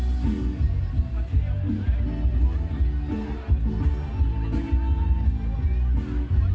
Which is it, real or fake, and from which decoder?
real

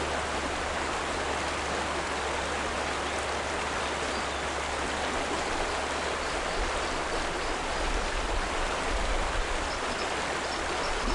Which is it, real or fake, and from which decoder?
real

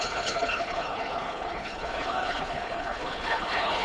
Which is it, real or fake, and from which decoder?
fake, codec, HILCodec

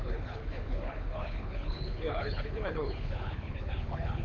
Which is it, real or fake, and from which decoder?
fake, codec, HILCodec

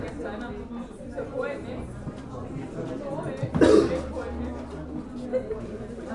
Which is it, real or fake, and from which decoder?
real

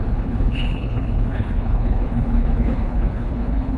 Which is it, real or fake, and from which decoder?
fake, codec, HILCodec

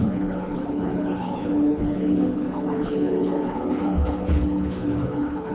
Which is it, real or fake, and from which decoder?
fake, codec, HILCodec